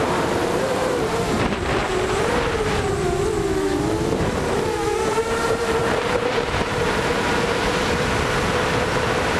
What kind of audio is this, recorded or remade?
remade